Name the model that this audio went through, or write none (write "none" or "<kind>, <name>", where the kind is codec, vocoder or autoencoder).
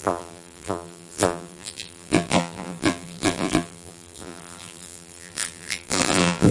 vocoder, BigVGAN v2